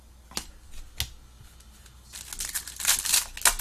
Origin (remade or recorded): recorded